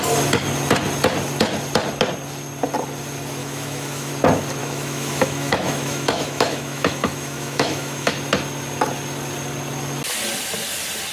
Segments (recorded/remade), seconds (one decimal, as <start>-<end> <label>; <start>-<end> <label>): 0.0-3.4 recorded; 3.4-4.1 remade; 4.1-4.6 recorded; 4.6-8.1 remade; 8.1-11.1 recorded